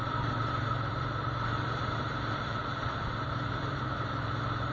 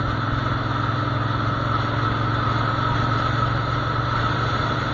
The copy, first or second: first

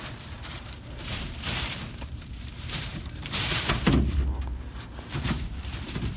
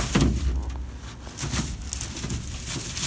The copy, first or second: first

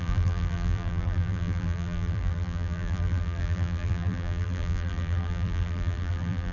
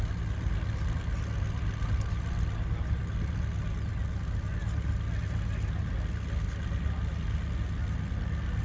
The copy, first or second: first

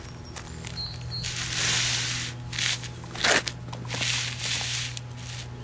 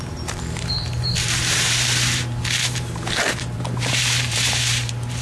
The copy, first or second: second